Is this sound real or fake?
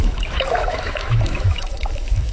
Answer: fake